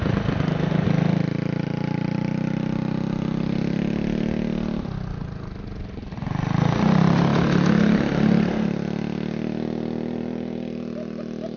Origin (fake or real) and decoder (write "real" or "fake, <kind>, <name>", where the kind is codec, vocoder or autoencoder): real